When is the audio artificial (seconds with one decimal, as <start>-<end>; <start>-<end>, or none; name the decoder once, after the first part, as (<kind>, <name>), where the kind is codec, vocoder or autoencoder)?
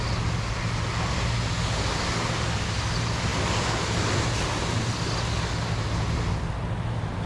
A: none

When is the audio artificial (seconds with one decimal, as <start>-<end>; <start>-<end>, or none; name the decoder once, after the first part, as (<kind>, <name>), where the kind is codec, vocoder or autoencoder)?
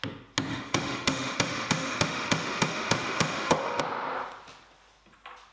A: 0.5-3.8 (autoencoder, DAC-VAE)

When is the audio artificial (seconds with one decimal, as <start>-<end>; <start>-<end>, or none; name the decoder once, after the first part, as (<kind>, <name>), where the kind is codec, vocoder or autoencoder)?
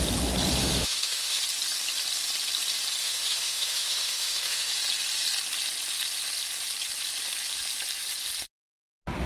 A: 0.6-1.4 (autoencoder, DAC-VAE); 3.0-4.7